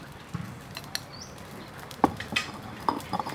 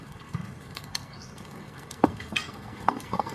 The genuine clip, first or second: first